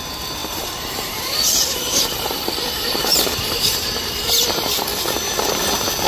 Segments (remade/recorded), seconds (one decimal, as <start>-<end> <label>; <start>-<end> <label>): 0.0-0.4 recorded; 0.4-1.8 remade; 1.8-3.1 recorded; 3.1-3.9 remade; 3.9-6.1 recorded